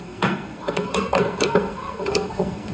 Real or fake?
fake